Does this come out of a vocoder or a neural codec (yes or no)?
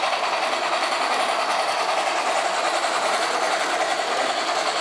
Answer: no